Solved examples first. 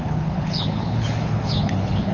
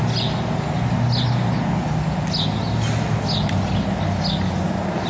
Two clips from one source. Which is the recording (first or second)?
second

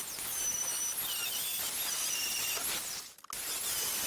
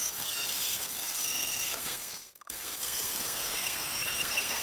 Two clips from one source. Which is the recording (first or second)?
first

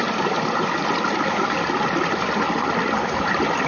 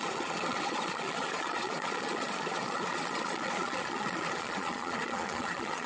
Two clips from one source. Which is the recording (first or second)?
first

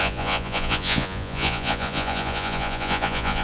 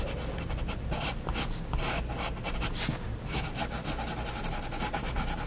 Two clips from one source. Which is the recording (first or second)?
second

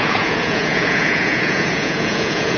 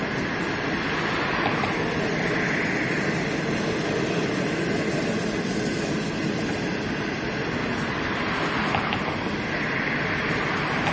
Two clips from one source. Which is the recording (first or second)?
second